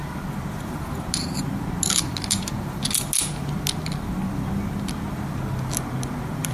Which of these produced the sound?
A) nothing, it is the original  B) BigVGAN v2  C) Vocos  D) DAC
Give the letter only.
A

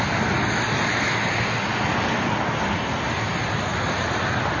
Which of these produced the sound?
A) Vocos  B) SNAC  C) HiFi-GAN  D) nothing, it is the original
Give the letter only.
D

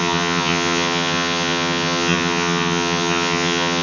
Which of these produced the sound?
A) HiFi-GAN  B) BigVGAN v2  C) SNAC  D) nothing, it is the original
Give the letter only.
A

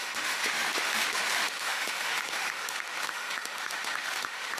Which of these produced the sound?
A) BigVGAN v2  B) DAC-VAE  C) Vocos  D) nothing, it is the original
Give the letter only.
B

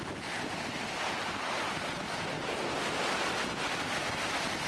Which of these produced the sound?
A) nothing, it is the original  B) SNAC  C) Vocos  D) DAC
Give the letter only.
A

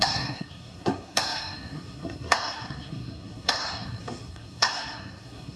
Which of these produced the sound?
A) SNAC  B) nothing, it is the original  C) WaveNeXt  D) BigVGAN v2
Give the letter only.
A